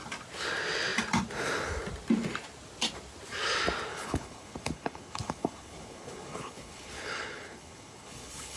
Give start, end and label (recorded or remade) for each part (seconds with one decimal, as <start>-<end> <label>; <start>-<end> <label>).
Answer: 0.0-3.9 recorded; 3.9-8.6 remade